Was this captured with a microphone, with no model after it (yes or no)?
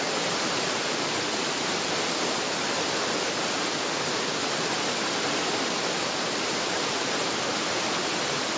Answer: yes